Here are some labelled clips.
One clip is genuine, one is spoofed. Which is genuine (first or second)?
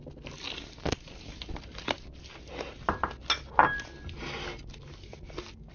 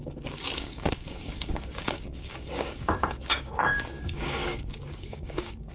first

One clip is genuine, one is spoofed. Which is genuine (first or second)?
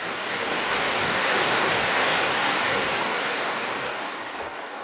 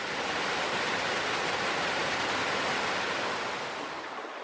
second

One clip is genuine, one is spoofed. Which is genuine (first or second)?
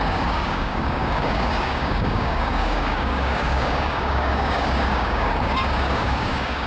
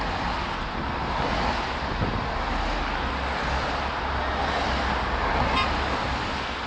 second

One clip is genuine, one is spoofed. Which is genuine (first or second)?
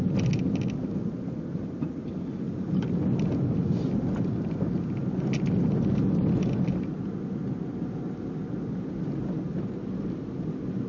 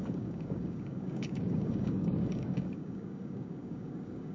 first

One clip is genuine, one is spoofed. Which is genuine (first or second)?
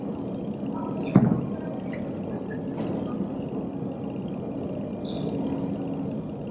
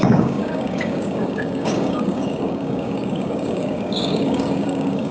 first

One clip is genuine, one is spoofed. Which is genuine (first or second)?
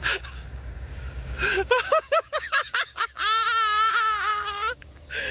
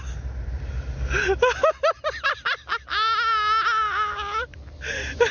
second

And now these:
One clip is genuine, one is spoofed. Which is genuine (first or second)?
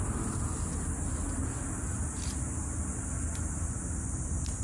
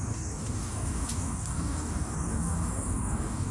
first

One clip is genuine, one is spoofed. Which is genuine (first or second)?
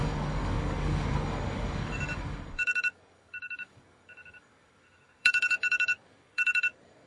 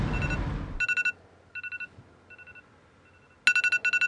second